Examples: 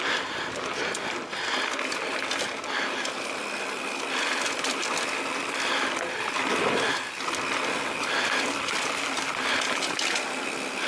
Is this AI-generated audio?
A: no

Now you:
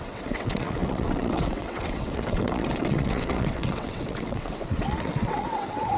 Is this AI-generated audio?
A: yes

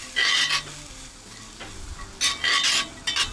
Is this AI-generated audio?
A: no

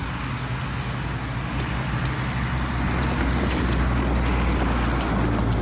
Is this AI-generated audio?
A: no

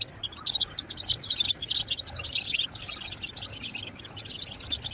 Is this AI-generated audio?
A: no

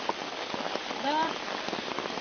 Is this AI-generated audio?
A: no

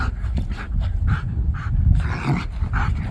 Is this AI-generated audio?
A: no